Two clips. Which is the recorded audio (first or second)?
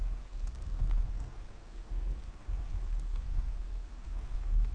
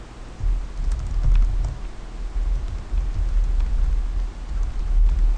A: second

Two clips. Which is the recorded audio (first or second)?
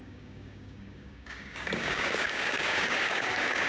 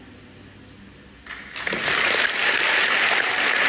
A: second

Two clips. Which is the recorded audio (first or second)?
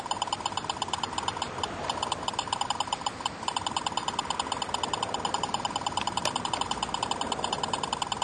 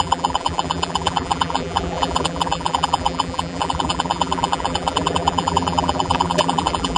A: first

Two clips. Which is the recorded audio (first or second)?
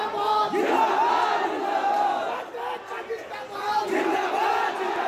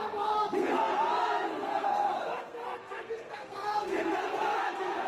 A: first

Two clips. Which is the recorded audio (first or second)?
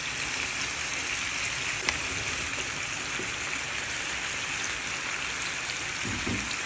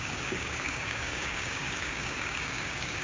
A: first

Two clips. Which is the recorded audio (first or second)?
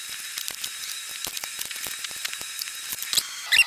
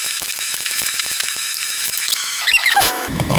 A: first